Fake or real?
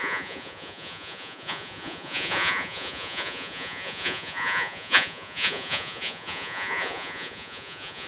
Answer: fake